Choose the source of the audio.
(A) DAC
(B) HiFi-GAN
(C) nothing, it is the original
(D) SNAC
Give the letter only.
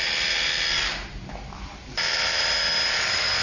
C